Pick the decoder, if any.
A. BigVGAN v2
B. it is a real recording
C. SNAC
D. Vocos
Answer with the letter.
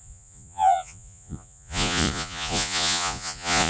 D